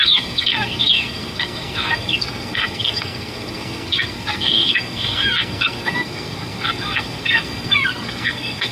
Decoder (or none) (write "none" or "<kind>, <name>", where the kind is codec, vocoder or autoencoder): codec, SNAC